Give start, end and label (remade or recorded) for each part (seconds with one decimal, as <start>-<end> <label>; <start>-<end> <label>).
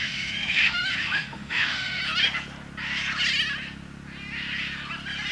0.0-2.0 remade; 2.0-5.3 recorded